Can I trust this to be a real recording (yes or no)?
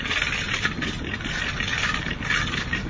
yes